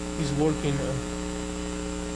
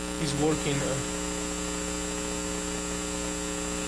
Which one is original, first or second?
second